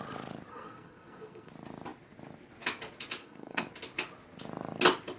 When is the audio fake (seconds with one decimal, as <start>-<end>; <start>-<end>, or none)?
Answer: 0.5-1.5; 3.2-3.7